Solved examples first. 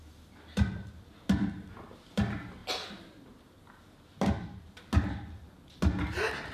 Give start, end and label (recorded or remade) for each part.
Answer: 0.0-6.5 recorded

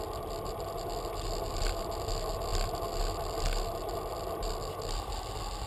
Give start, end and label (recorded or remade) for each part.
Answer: 0.0-5.7 recorded

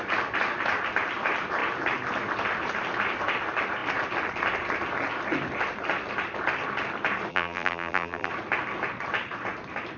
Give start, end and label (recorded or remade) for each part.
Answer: 0.0-7.3 recorded; 7.3-8.3 remade; 8.3-10.0 recorded

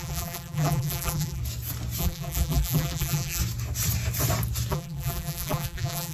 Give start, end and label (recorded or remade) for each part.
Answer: 0.0-1.4 remade; 1.4-2.0 recorded; 2.0-3.4 remade; 3.4-4.7 recorded; 4.7-6.1 remade

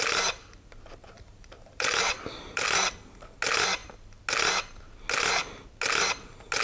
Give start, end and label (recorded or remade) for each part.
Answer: 0.0-1.0 recorded; 1.0-2.9 remade; 2.9-6.6 recorded

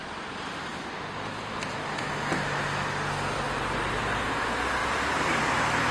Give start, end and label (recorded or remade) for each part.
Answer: 0.0-0.7 remade; 0.7-4.2 recorded; 4.2-5.9 remade